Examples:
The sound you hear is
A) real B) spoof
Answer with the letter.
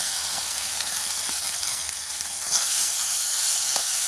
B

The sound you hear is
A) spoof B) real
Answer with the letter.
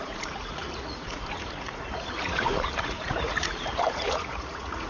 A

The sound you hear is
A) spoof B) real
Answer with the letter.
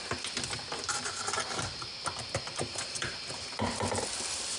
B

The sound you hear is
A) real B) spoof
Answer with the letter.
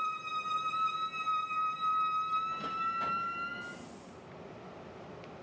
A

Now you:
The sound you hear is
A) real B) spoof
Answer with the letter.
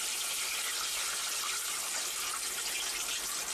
A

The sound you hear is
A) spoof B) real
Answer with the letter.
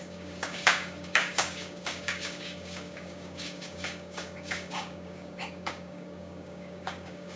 A